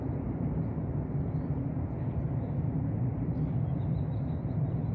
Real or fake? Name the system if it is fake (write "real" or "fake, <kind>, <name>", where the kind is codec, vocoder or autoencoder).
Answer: real